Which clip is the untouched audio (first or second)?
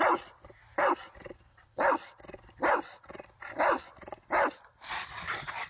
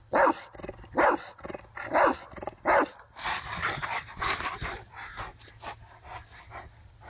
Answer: second